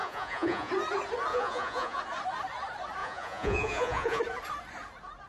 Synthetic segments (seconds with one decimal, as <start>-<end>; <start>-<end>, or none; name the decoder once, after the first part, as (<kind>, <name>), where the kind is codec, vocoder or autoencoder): 0.0-0.7 (vocoder, Vocos); 1.3-2.0; 3.0-4.2